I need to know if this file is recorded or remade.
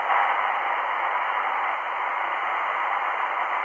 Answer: recorded